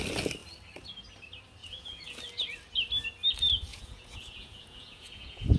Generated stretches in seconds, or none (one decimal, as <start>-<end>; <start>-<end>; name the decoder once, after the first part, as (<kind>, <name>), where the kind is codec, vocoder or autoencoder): 1.6-2.2 (vocoder, Vocos); 3.7-5.6